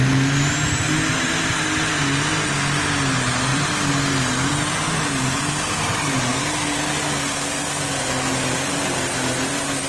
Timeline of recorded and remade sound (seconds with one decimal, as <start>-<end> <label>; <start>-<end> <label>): 0.0-9.9 recorded